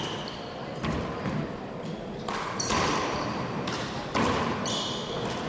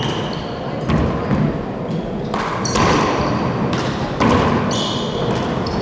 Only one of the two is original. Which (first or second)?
second